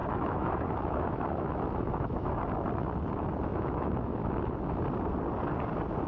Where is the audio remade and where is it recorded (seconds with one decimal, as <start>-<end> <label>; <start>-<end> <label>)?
0.0-2.3 remade; 2.3-3.5 recorded; 3.5-4.2 remade; 4.2-6.1 recorded